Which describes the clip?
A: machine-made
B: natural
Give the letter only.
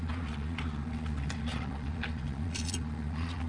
A